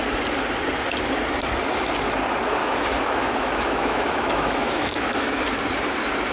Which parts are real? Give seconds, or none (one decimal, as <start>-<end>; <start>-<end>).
0.0-2.6; 5.4-6.3